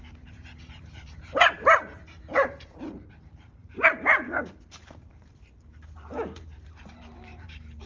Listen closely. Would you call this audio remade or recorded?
remade